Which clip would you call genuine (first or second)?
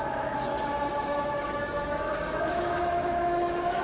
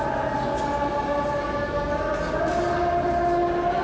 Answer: second